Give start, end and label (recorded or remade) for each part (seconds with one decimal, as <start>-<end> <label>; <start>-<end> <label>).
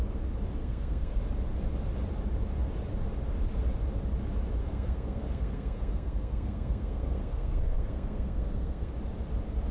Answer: 0.0-0.6 recorded; 0.6-1.2 remade; 1.2-4.6 recorded; 4.6-8.9 remade; 8.9-9.7 recorded